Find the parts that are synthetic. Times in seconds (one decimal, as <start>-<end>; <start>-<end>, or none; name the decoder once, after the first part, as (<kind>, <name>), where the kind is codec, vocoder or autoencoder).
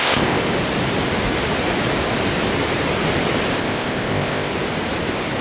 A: 0.0-0.4 (codec, ZipCodec); 3.6-4.5